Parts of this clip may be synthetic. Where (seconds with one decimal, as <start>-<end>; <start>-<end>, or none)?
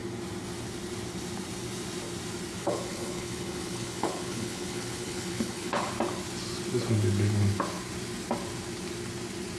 2.6-5.9